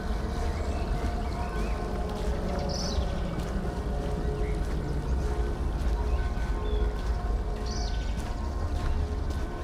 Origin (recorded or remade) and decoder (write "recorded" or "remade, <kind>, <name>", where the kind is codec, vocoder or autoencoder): recorded